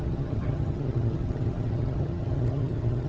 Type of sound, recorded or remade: remade